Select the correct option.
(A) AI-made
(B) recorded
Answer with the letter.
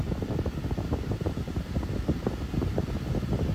B